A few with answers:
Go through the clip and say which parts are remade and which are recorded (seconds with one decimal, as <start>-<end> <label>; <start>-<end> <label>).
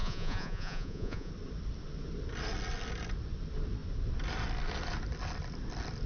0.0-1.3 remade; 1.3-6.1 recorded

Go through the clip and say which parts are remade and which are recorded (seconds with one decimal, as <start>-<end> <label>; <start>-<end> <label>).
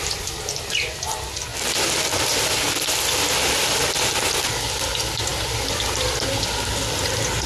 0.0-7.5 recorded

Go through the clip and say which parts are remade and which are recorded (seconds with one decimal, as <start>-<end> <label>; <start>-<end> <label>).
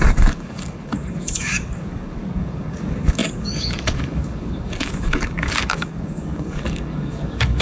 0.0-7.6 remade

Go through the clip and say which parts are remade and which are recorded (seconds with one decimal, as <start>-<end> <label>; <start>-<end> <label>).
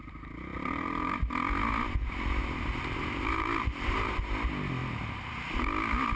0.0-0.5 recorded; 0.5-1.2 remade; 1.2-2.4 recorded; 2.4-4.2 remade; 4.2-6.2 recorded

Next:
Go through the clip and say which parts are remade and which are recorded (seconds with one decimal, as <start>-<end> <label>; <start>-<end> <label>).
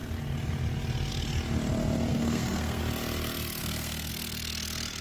0.0-2.1 recorded; 2.1-2.8 remade; 2.8-3.6 recorded; 3.6-4.1 remade; 4.1-5.0 recorded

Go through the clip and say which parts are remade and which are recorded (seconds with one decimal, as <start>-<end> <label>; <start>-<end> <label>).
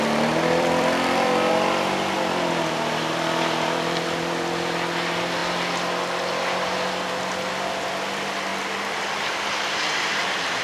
0.0-5.4 remade; 5.4-7.5 recorded; 7.5-10.6 remade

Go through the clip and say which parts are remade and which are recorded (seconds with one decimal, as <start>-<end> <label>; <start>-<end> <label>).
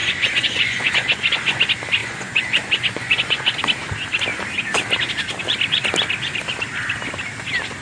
0.0-1.6 remade; 1.6-2.0 recorded; 2.0-3.6 remade; 3.6-7.8 recorded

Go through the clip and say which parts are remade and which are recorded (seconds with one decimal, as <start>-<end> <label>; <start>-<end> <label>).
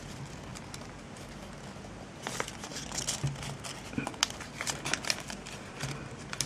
0.0-0.5 recorded; 0.5-1.1 remade; 1.1-2.7 recorded; 2.7-6.5 remade